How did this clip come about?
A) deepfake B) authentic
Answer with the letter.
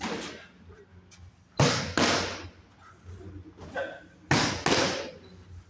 B